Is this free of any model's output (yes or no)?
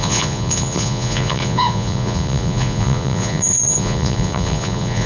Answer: no